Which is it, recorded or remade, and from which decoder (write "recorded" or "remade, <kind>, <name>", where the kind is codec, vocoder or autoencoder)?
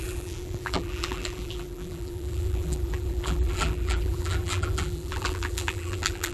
remade, vocoder, BigVGAN v2